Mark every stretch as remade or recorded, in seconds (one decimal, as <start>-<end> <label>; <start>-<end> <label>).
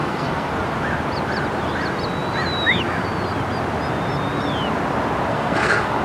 0.0-0.5 remade; 0.5-5.3 recorded; 5.3-6.0 remade